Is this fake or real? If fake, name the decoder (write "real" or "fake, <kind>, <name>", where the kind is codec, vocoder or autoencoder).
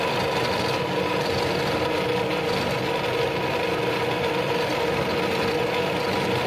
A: real